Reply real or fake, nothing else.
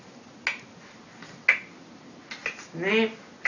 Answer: real